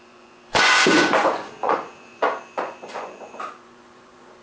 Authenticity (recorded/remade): remade